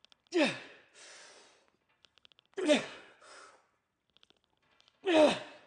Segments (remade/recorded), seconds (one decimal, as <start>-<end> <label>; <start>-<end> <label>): 0.0-2.6 recorded; 2.6-3.5 remade; 3.5-5.7 recorded